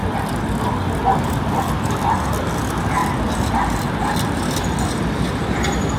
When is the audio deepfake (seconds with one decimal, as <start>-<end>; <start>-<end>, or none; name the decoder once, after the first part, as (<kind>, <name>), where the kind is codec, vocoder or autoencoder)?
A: none